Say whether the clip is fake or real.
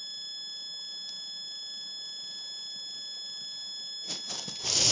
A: real